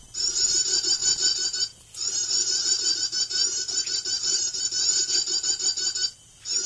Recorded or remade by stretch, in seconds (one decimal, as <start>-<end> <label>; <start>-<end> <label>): 0.0-6.7 recorded